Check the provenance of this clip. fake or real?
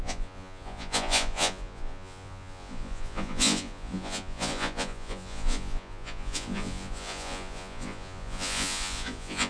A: fake